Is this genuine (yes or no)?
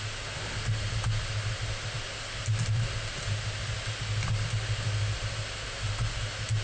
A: yes